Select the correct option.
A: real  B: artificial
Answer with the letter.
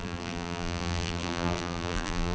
B